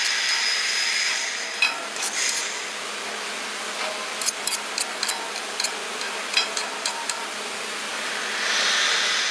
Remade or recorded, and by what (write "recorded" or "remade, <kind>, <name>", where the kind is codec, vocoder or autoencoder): recorded